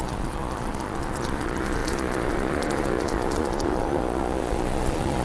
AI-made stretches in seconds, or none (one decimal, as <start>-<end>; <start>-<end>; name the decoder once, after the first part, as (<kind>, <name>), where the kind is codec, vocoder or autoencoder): 0.0-5.2 (vocoder, Vocos)